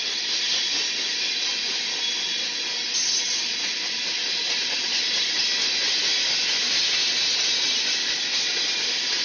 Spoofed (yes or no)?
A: no